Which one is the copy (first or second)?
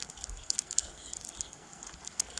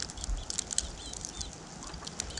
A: first